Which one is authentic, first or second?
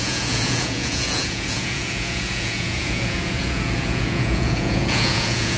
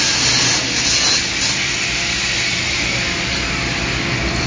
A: second